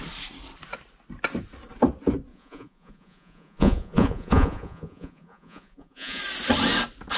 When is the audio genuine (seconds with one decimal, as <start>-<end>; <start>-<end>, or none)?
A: 0.0-2.3; 6.2-7.2